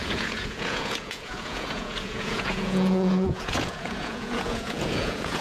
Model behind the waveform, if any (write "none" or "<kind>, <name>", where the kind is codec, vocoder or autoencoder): vocoder, Vocos